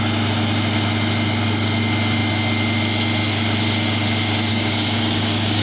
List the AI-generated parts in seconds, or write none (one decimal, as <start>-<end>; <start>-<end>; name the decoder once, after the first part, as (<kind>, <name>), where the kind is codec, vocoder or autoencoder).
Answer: 4.5-5.6 (codec, DAC)